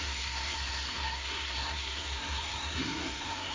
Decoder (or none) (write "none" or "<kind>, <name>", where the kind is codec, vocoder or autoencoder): codec, SNAC